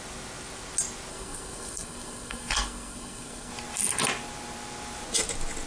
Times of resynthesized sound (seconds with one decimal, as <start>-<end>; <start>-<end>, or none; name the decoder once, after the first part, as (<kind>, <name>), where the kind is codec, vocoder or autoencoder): 1.1-3.5 (codec, SNAC)

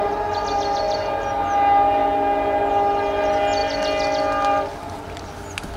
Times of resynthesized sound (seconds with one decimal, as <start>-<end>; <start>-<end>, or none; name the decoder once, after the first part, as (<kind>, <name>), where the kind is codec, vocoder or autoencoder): none

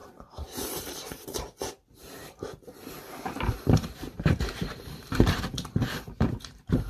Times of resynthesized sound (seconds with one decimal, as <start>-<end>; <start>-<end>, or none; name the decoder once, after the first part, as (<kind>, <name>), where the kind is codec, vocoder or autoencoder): 0.0-6.9 (vocoder, BigVGAN v2)

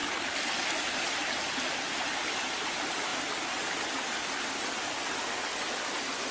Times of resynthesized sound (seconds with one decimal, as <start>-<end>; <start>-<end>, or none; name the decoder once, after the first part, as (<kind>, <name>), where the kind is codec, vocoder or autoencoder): none

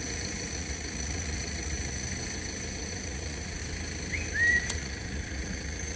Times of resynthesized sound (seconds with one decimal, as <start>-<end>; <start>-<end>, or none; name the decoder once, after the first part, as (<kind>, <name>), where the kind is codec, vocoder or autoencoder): 0.0-2.1 (vocoder, Vocos); 2.9-3.6; 4.5-6.0

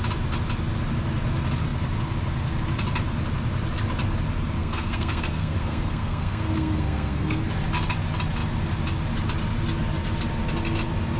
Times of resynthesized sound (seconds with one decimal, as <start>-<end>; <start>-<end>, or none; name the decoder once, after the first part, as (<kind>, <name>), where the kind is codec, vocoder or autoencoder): 4.6-7.5 (codec, SNAC)

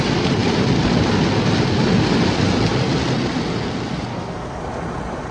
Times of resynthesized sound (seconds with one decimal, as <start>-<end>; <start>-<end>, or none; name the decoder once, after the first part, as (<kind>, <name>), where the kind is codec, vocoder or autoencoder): 4.1-4.6 (codec, SNAC)